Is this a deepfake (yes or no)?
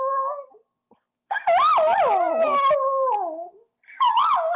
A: no